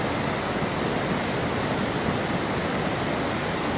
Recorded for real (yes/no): yes